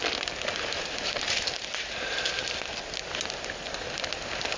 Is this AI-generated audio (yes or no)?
no